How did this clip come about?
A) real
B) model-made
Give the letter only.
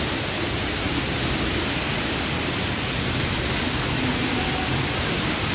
A